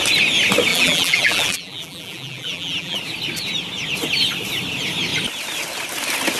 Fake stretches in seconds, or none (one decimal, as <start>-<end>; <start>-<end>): 0.7-3.0